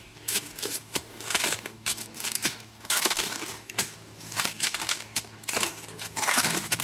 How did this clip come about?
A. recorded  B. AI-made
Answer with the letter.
B